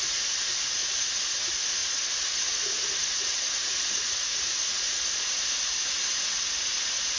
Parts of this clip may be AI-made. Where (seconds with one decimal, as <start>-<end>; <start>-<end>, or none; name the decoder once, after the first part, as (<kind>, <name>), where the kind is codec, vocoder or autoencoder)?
1.8-5.1 (vocoder, Vocos)